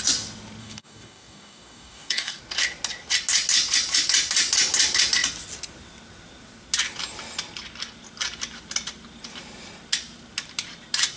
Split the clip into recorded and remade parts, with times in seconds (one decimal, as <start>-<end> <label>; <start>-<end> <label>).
0.0-0.6 recorded; 0.6-2.4 remade; 2.4-11.2 recorded